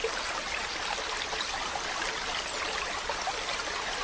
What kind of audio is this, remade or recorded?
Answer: recorded